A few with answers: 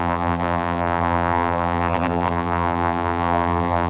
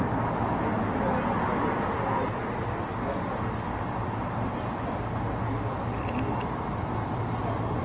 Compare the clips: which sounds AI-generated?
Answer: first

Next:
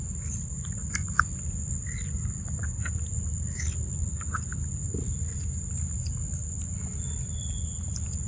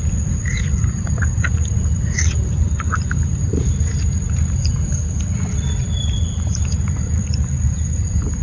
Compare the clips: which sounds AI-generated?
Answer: second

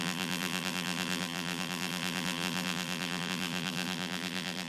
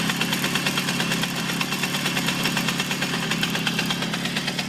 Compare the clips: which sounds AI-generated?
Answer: first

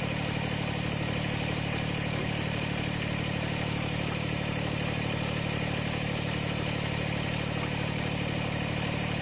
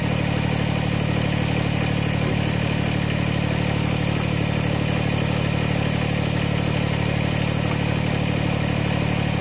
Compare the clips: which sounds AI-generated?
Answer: first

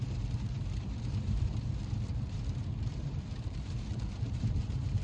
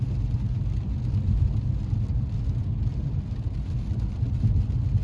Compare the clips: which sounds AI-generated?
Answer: first